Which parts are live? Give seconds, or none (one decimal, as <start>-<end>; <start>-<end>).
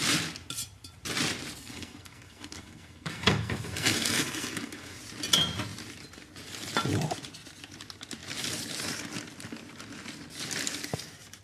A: 0.0-1.6; 5.0-11.4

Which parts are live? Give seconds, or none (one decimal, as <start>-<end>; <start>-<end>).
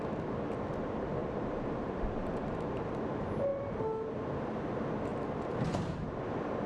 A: 0.0-1.2; 2.7-3.5; 4.2-5.1; 6.2-6.7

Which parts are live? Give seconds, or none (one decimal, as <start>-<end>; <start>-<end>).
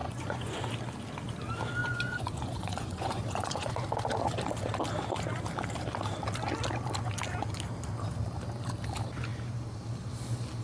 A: 0.7-1.8; 3.7-10.6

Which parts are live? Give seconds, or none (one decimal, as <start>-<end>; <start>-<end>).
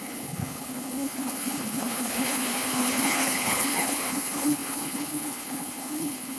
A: none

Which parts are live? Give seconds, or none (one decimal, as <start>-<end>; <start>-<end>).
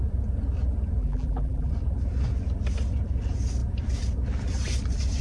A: 0.0-1.0; 1.7-5.2